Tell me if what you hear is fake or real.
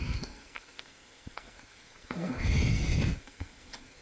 fake